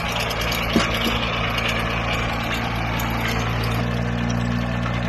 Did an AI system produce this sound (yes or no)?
no